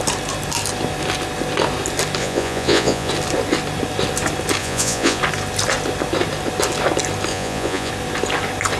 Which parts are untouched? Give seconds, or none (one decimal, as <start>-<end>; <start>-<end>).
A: 0.0-2.2; 3.1-4.6; 5.2-7.3; 7.9-8.8